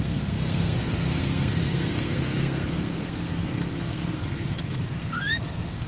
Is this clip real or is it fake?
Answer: fake